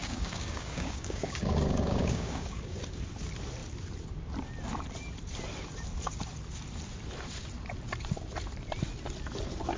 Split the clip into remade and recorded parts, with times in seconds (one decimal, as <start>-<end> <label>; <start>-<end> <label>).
0.0-2.8 remade; 2.8-9.8 recorded